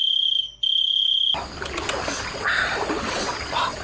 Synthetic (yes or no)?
no